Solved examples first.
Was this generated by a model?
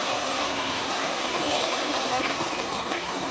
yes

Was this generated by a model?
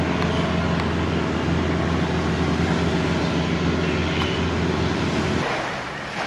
no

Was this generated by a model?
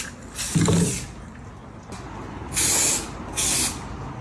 no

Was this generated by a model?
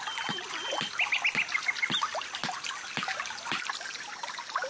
no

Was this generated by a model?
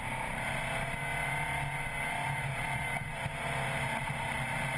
no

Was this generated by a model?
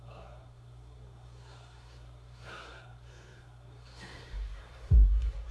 yes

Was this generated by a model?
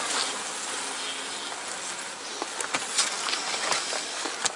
no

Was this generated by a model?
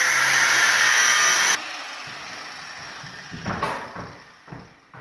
no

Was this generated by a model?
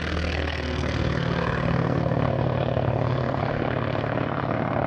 yes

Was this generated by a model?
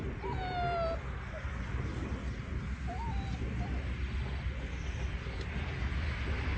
no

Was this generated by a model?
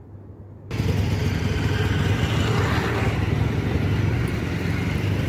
no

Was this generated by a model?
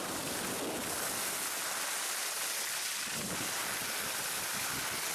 no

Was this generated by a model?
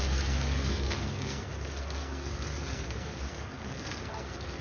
yes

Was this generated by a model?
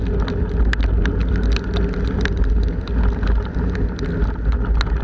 no